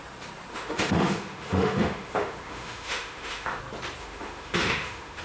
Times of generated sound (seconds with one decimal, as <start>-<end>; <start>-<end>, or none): 0.5-3.6; 4.0-5.2